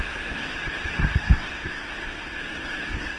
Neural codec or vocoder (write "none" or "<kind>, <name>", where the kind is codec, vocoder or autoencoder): codec, SNAC